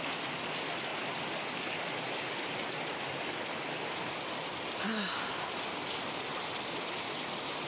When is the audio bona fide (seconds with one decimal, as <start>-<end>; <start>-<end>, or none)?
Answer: 0.0-7.7